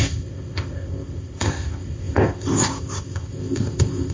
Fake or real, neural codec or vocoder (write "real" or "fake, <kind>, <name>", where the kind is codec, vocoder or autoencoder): fake, codec, ZipCodec